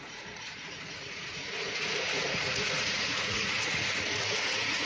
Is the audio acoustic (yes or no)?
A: no